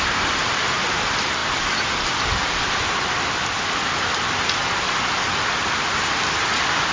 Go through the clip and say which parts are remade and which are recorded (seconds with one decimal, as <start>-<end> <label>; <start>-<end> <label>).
0.0-6.9 recorded